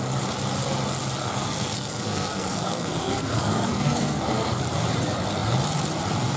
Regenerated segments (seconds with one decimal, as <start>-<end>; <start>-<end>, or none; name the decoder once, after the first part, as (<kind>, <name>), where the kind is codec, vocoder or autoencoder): 1.2-4.6 (codec, SNAC)